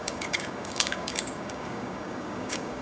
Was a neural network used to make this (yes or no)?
yes